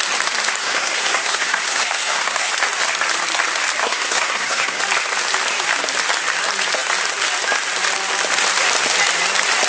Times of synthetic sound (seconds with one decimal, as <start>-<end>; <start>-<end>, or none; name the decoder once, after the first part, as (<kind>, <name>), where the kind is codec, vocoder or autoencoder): 0.6-2.5 (codec, SNAC); 3.8-4.8